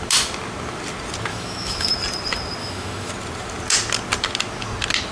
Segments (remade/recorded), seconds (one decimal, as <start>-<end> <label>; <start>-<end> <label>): 0.0-1.3 recorded; 1.3-1.9 remade; 1.9-2.6 recorded; 2.6-3.1 remade; 3.1-5.1 recorded